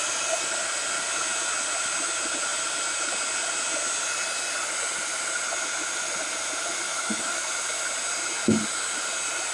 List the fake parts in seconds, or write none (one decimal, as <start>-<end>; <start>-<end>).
6.9-7.5